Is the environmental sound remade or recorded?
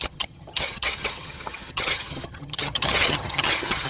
remade